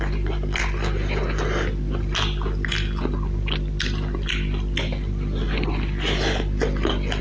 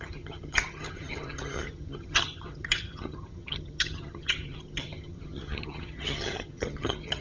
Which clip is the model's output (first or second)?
second